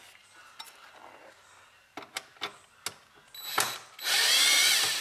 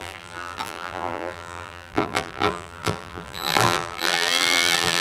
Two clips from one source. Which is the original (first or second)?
first